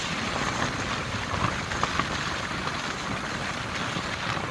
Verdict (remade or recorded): recorded